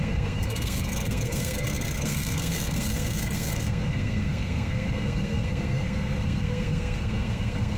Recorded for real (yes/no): no